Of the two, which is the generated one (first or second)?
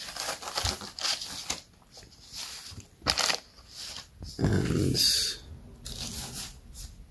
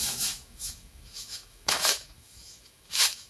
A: second